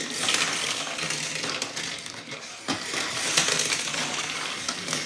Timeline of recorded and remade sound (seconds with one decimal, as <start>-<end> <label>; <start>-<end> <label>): 0.0-0.6 recorded; 0.6-1.1 remade; 1.1-1.9 recorded; 1.9-2.6 remade; 2.6-3.9 recorded; 3.9-5.1 remade